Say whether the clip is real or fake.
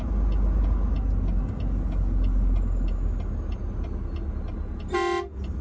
real